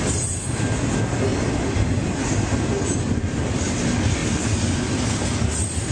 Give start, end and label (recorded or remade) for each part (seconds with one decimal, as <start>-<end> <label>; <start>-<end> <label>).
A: 0.0-5.9 recorded